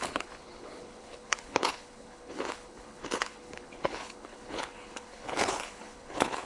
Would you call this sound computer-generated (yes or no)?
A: yes